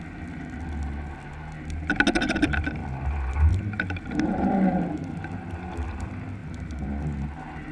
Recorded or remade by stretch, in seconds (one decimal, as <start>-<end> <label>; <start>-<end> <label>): 0.0-7.7 recorded